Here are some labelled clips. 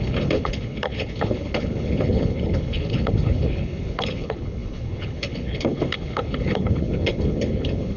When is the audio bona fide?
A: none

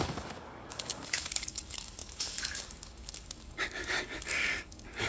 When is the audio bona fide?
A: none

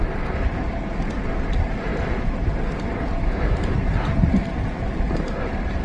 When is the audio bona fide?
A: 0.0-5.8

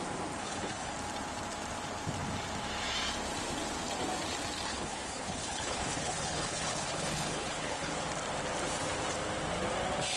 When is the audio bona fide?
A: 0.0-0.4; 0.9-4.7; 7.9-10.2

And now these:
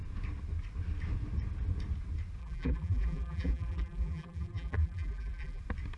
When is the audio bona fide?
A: 0.0-2.4; 5.6-6.0

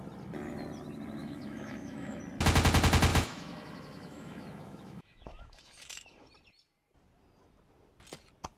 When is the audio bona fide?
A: 0.0-1.2; 2.2-3.1; 6.3-8.6

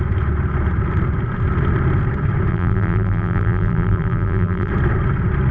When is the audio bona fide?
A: 0.0-2.5; 4.7-5.5

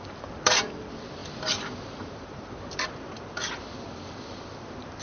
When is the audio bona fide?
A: none